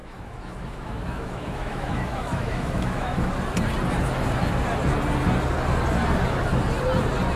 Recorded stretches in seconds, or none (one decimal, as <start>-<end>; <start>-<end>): 3.3-7.4